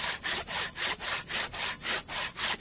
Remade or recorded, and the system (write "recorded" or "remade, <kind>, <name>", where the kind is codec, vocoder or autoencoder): recorded